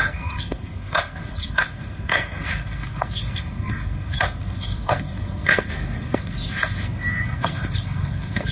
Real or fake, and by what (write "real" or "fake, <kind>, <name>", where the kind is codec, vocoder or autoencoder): fake, codec, SNAC